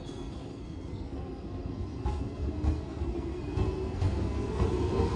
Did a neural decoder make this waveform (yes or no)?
yes